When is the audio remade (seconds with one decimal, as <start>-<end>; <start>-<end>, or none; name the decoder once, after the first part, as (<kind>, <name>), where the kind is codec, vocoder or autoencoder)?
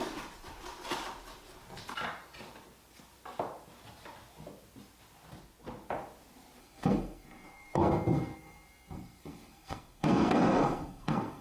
6.6-11.4 (codec, SNAC)